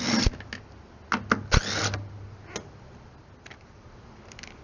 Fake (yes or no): no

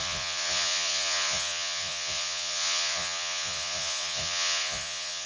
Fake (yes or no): yes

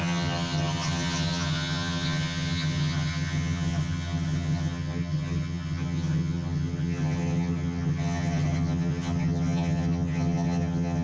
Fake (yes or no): yes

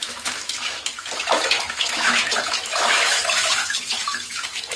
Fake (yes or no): yes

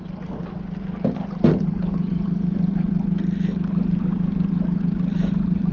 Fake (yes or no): no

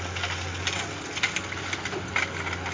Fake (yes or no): no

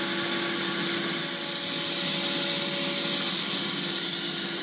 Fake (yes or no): no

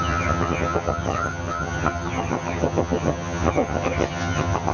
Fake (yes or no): yes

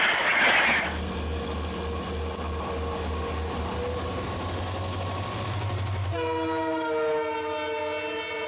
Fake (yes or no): no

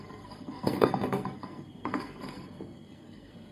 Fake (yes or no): yes